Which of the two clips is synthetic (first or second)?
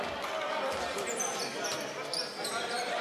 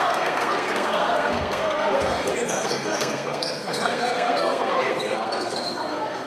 second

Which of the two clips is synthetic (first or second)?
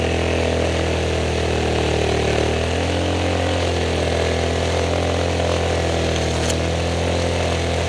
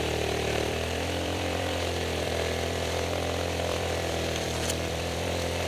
second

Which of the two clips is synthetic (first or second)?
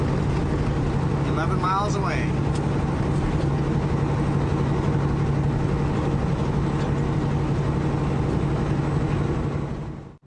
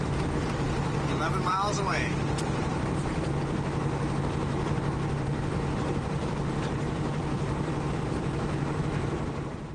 second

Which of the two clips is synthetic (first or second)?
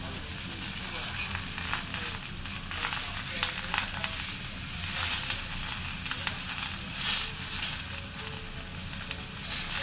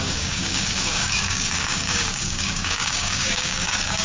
second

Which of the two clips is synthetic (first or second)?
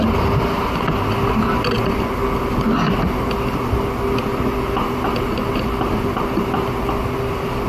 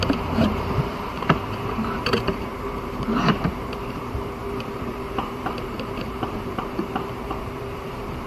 second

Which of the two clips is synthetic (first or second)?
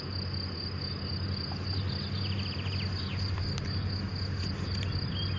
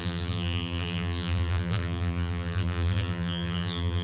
second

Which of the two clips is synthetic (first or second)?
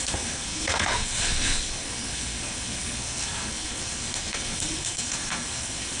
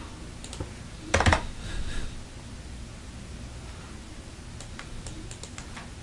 first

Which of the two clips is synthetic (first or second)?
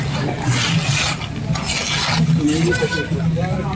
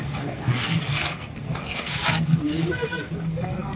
second